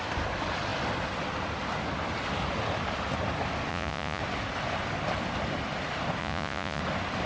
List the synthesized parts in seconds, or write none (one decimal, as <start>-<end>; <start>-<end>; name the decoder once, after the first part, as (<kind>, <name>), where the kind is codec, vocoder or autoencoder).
3.7-4.2 (vocoder, Vocos); 6.2-6.8